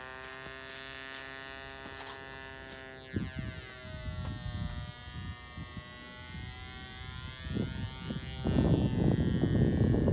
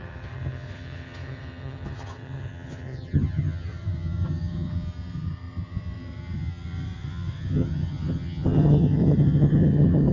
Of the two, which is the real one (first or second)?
first